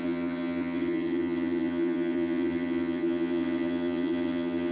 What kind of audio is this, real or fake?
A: fake